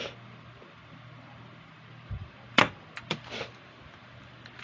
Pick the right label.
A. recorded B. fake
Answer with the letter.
B